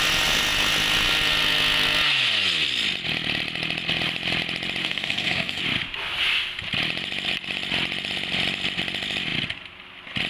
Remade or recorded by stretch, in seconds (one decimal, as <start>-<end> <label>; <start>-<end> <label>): 0.0-4.8 recorded; 4.8-5.6 remade; 5.6-10.3 recorded